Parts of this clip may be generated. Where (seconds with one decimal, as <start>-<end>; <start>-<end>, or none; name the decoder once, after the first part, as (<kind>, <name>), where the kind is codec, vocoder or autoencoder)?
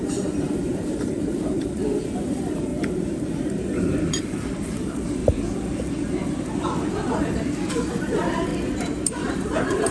0.0-2.7 (vocoder, BigVGAN v2); 3.3-5.2; 7.7-8.5; 9.1-9.9